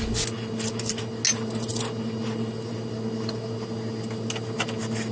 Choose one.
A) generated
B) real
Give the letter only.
B